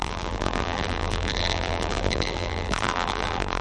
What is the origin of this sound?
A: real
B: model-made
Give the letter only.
B